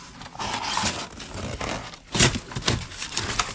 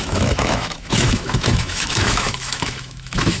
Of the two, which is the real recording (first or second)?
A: first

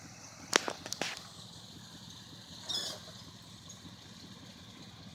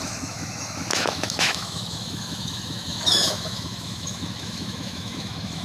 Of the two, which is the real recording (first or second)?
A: first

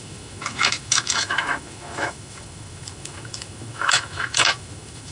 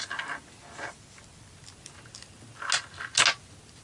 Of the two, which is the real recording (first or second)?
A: second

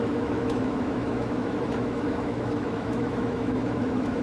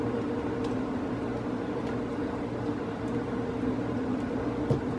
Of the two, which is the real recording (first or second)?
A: second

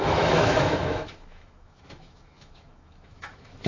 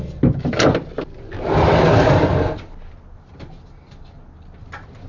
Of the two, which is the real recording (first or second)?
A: second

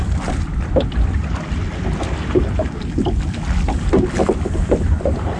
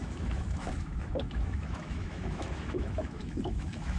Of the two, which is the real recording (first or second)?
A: first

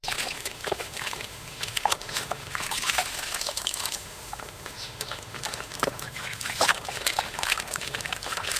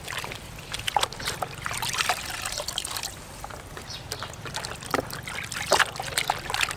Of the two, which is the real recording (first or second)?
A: second